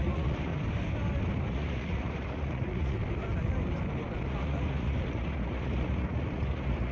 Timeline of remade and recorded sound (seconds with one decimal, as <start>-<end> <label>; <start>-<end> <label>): 0.0-0.5 remade; 0.5-1.5 recorded; 1.5-3.0 remade; 3.0-4.3 recorded; 4.3-6.9 remade